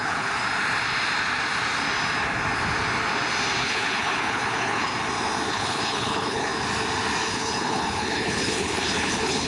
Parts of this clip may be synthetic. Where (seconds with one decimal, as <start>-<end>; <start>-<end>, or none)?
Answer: 0.0-0.4; 3.6-4.9; 5.5-6.5; 7.3-9.5